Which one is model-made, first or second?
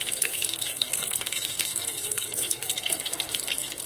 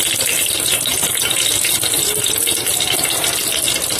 first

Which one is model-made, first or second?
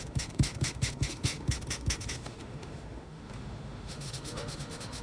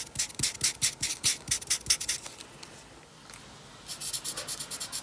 first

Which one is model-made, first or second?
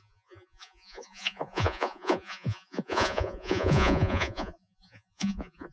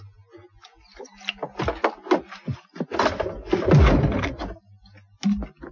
first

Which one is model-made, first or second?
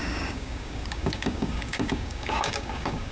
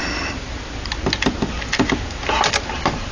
first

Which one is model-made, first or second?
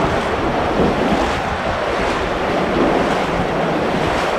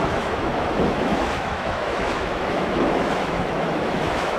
second